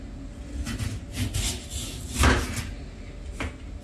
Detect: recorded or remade recorded